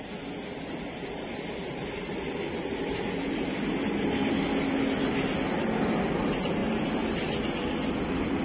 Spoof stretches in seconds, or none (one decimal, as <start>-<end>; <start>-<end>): none